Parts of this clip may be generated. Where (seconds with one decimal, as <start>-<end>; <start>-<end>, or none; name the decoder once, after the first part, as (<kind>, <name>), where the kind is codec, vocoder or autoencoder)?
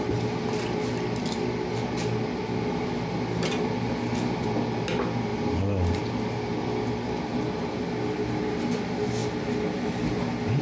none